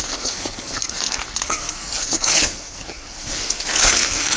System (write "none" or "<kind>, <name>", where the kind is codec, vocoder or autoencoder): codec, SNAC